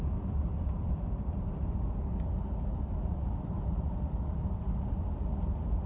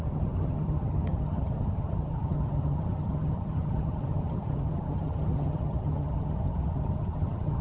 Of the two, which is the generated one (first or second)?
second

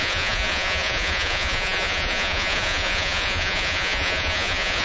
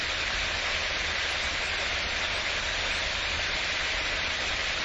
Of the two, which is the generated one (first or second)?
first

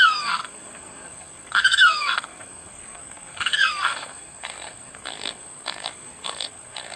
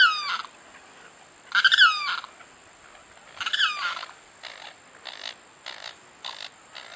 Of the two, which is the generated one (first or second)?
first